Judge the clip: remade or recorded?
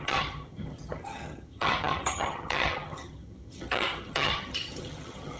remade